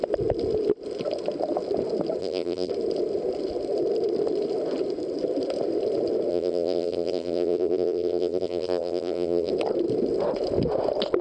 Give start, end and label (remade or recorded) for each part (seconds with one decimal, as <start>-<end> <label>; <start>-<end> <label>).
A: 0.0-2.2 recorded; 2.2-2.7 remade; 2.7-6.3 recorded; 6.3-9.5 remade; 9.5-11.2 recorded